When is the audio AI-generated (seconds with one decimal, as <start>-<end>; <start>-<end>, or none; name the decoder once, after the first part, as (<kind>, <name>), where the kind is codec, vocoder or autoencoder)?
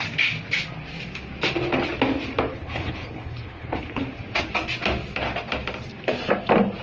2.5-4.0 (codec, HILCodec)